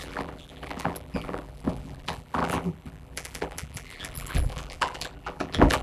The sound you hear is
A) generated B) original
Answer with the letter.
A